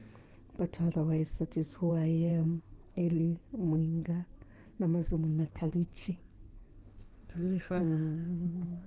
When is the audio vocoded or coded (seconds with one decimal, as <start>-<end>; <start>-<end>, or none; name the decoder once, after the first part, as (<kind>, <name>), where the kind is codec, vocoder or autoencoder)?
2.3-3.2 (codec, SNAC); 5.3-7.8